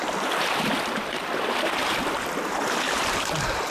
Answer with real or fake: fake